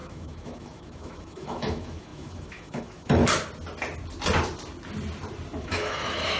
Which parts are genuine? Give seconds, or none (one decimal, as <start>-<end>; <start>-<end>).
3.2-5.6